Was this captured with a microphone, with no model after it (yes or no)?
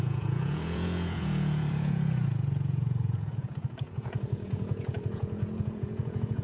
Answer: no